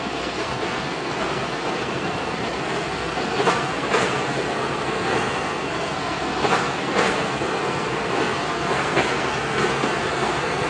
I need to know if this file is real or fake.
fake